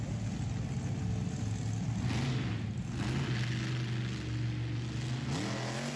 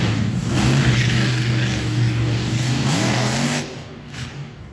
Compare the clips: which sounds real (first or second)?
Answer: first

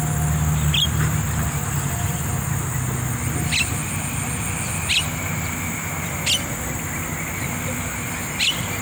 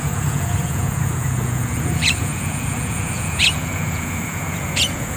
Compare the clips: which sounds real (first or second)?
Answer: first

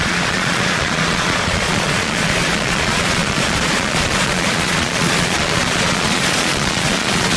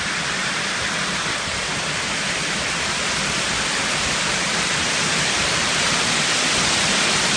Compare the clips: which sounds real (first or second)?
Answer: second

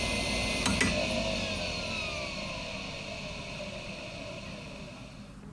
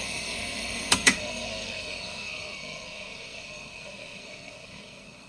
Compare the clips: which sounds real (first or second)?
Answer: first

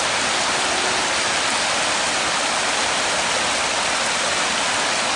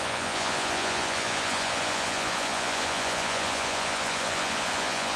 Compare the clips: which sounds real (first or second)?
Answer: first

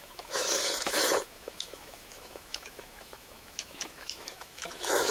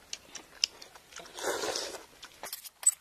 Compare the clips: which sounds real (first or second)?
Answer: second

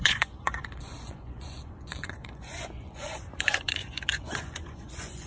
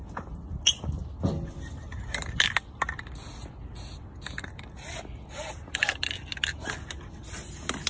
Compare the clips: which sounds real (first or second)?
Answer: second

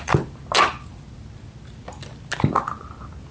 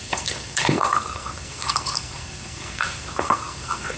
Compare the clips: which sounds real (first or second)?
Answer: first